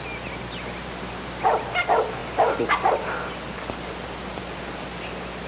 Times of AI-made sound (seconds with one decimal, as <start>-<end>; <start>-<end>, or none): none